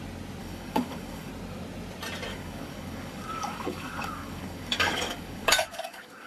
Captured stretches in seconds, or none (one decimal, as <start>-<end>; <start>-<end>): 0.0-0.4; 1.3-2.3